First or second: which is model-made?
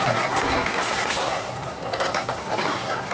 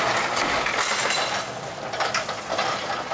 first